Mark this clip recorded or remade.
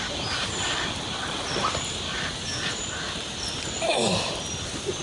recorded